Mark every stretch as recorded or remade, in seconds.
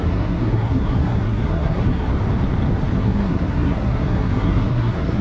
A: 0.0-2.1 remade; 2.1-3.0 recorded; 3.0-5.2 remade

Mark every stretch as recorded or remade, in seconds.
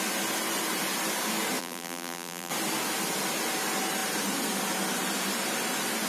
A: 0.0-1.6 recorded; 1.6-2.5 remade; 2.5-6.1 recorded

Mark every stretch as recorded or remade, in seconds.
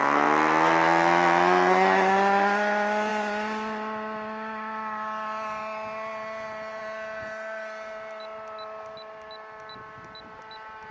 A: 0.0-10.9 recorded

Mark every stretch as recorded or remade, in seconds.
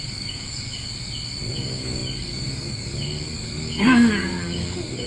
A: 0.0-0.9 remade; 0.9-1.5 recorded; 1.5-5.1 remade